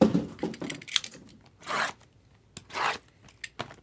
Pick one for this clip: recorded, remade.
recorded